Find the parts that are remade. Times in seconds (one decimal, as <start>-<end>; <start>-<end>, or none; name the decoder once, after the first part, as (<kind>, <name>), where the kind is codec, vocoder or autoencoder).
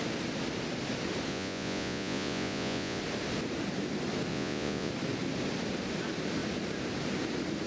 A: 1.3-3.0 (vocoder, Vocos); 4.3-4.9